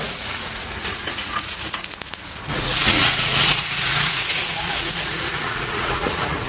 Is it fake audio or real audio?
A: fake